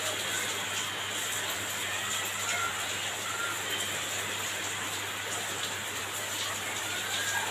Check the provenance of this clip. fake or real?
real